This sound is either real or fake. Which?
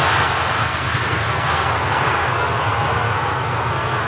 fake